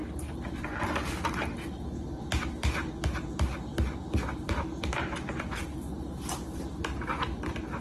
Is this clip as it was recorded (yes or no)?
yes